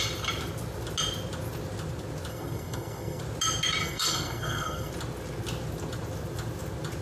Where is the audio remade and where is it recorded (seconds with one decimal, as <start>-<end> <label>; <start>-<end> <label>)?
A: 0.0-2.3 recorded; 2.3-3.2 remade; 3.2-3.8 recorded; 3.8-4.9 remade; 4.9-7.0 recorded